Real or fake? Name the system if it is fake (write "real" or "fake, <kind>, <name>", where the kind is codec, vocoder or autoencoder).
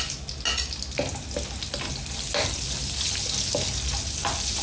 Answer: real